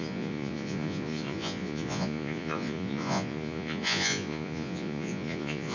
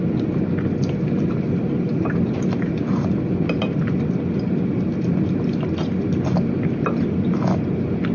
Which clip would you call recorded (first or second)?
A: second